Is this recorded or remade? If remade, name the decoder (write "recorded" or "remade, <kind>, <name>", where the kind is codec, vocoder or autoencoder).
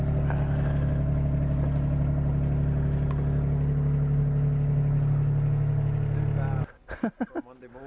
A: recorded